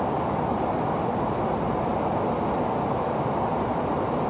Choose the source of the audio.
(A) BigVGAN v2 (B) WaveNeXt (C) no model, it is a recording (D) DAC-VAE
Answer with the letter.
C